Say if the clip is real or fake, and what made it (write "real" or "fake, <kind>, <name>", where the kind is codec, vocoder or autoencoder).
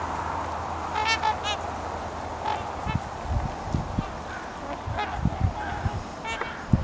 real